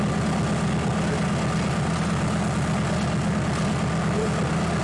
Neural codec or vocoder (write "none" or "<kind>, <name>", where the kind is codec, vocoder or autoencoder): none